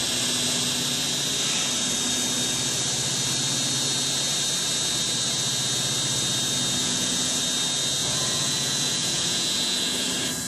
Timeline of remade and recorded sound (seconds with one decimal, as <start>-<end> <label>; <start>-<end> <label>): 0.0-6.8 recorded; 6.8-7.4 remade; 7.4-8.0 recorded; 8.0-10.1 remade; 10.1-10.5 recorded